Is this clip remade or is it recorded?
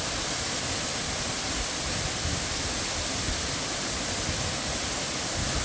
recorded